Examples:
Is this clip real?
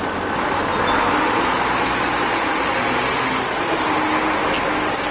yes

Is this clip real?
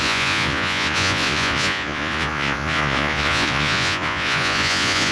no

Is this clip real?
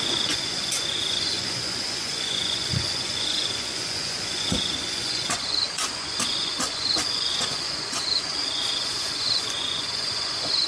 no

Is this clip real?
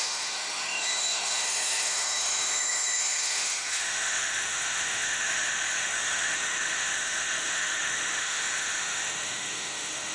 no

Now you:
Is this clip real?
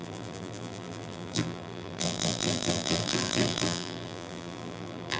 no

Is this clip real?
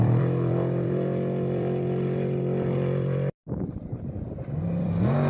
no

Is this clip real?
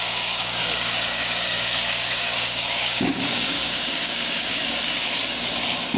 no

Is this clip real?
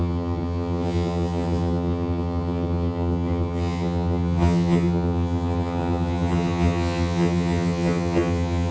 no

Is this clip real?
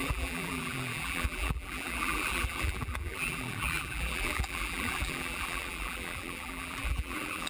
no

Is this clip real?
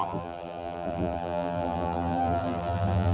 no